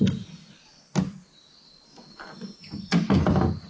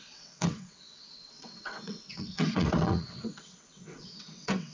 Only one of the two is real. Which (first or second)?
first